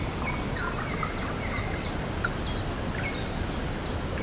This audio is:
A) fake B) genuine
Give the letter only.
B